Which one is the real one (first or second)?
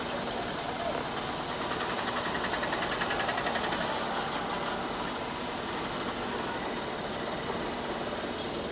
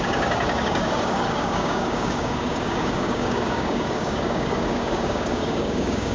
first